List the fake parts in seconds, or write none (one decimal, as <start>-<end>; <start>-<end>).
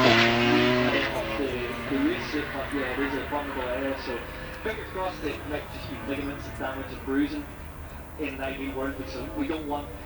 4.4-6.1; 8.5-9.4